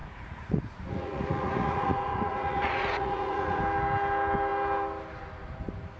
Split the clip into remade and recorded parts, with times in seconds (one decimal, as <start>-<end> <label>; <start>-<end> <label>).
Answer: 0.0-3.6 remade; 3.6-6.0 recorded

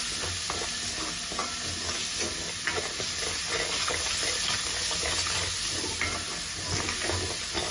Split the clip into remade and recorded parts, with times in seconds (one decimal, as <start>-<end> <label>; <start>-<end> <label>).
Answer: 0.0-7.7 recorded

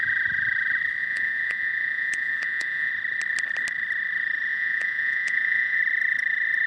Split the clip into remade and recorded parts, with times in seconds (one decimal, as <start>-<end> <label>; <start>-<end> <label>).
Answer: 0.0-1.0 recorded; 1.0-2.9 remade; 2.9-4.5 recorded; 4.5-5.8 remade; 5.8-6.7 recorded

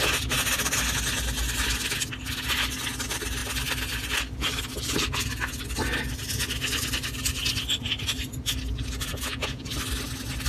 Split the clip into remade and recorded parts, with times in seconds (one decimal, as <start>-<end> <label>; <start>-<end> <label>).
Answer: 0.0-9.1 recorded; 9.1-9.7 remade; 9.7-10.5 recorded

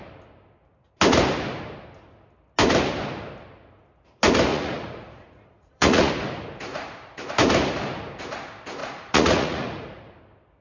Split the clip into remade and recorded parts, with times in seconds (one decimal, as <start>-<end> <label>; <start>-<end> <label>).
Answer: 0.0-4.5 recorded; 4.5-6.1 remade; 6.1-6.7 recorded; 6.7-7.2 remade; 7.2-8.8 recorded; 8.8-10.2 remade; 10.2-10.6 recorded